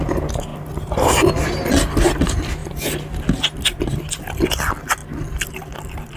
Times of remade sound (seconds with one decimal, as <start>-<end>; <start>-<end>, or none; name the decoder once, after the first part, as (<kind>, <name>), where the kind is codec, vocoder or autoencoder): none